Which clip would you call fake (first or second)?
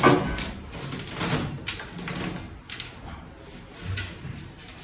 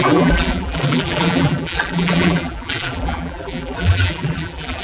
second